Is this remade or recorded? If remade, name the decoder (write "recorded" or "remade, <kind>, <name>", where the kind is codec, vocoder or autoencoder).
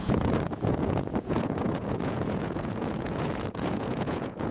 remade, vocoder, Vocos